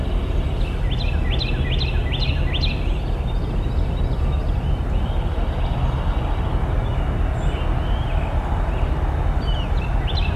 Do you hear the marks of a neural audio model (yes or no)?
no